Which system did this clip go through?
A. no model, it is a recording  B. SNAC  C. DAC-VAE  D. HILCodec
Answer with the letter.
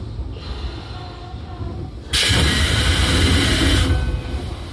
A